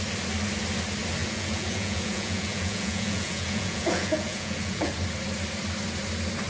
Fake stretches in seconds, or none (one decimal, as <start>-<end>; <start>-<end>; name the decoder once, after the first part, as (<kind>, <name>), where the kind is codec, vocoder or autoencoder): 1.2-4.9 (vocoder, Vocos)